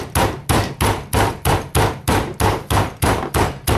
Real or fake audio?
real